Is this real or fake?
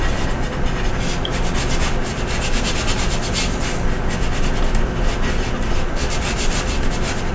real